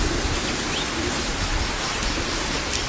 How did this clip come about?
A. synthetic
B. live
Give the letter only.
B